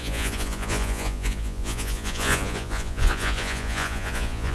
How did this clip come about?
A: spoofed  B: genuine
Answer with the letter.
A